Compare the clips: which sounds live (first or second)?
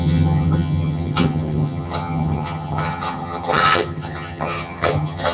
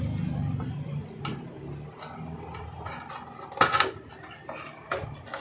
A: second